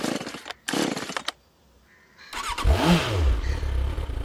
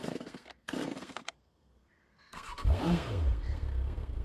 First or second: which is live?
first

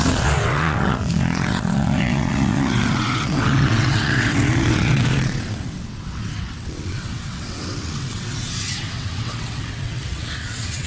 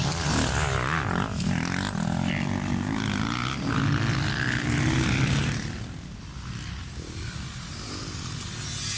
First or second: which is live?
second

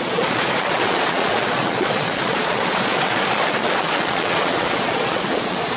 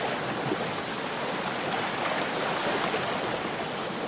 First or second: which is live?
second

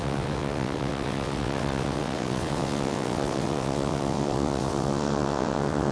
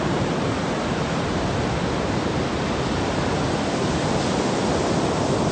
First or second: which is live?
second